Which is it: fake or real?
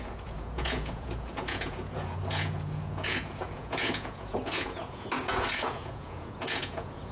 fake